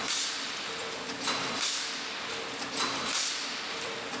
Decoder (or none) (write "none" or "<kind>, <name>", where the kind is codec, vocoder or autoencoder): none